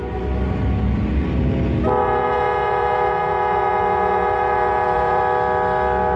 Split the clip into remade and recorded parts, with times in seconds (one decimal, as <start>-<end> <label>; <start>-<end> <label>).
0.0-2.0 recorded; 2.0-5.2 remade; 5.2-6.2 recorded